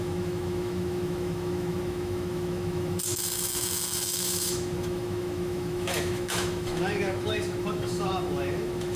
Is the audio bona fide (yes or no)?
no